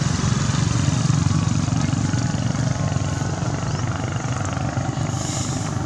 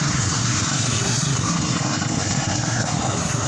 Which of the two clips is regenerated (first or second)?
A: second